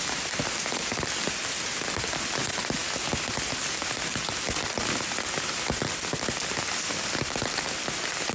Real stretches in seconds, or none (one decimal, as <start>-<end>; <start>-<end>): 0.0-8.3